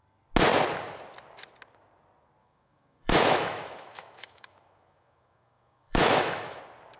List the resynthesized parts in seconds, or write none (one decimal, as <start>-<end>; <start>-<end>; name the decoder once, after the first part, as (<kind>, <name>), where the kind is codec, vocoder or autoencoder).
2.4-6.6 (autoencoder, DAC-VAE)